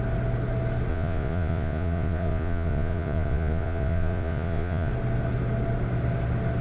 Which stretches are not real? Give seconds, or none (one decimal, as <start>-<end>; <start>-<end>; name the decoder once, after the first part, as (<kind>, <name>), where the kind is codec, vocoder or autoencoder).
0.9-4.9 (vocoder, Vocos)